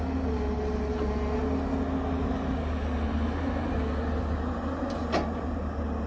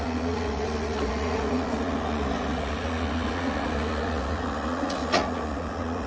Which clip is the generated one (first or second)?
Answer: second